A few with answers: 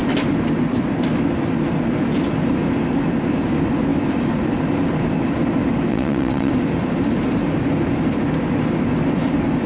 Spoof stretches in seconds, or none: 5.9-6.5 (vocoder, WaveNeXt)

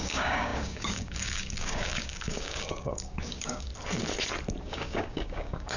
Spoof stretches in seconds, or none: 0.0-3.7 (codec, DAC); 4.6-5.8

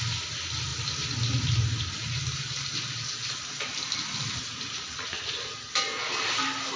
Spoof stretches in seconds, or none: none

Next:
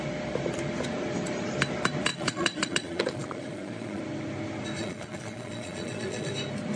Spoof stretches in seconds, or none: 2.1-4.0 (vocoder, Vocos); 4.8-6.3

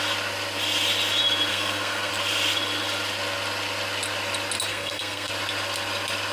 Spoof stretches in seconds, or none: 1.5-2.1 (codec, SNAC); 4.7-5.3